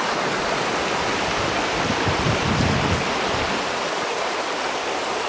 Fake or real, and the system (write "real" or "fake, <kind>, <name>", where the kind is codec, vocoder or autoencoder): real